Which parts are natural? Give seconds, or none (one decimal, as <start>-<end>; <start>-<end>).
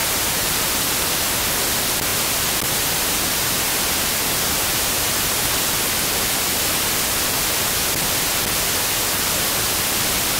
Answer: 0.7-10.4